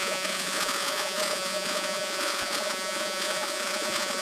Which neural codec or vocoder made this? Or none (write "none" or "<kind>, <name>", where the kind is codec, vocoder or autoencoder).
vocoder, Vocos